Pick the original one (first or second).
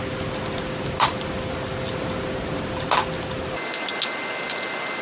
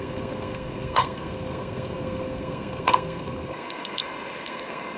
first